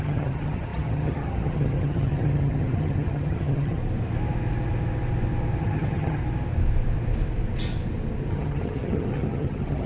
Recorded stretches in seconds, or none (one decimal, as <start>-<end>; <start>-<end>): 3.8-5.6; 6.2-8.3